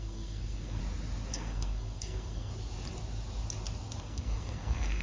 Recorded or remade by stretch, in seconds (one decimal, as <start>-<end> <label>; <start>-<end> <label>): 0.0-0.8 remade; 0.8-1.3 recorded; 1.3-2.5 remade; 2.5-4.0 recorded; 4.0-5.0 remade

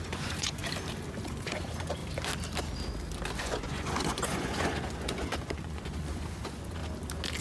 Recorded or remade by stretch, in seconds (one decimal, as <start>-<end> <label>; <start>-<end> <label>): 0.0-0.6 remade; 0.6-1.2 recorded; 1.2-2.0 remade; 2.0-3.4 recorded; 3.4-6.8 remade; 6.8-7.4 recorded

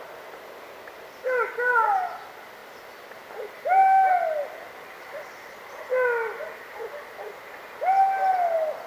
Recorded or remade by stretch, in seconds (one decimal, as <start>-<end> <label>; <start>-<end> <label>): 0.0-8.9 recorded